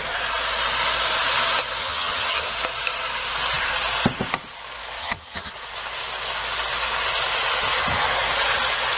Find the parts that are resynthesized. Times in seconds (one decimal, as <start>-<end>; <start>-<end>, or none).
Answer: 1.8-2.5; 5.0-5.5